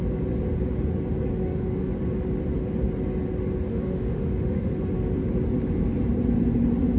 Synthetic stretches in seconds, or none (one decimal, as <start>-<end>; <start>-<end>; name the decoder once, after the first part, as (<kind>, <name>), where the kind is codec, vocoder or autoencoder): 1.4-1.9 (autoencoder, DAC-VAE); 3.7-4.7